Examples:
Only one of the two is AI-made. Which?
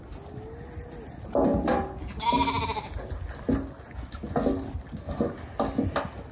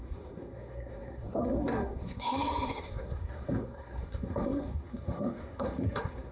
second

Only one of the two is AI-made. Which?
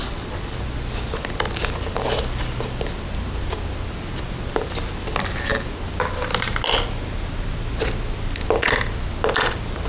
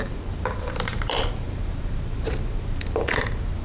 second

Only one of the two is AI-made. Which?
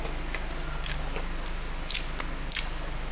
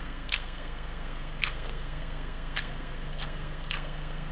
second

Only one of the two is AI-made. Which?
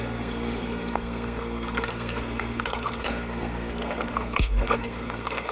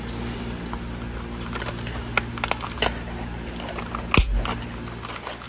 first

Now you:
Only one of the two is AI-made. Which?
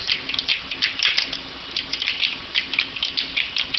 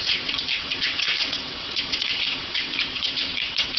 second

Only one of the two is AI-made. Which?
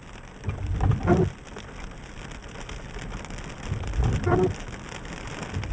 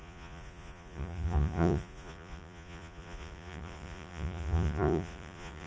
second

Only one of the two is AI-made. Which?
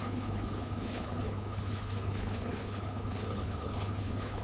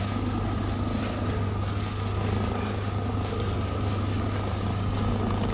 first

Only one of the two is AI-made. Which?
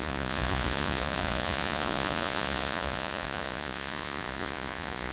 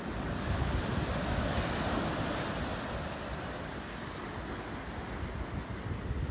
first